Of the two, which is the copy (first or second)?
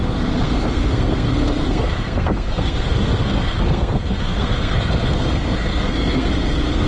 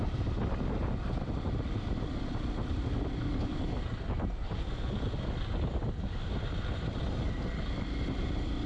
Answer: first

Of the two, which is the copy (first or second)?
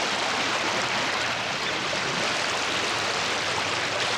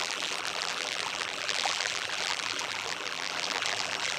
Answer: second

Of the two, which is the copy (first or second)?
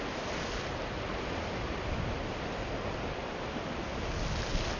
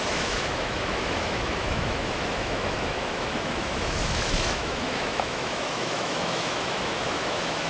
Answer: second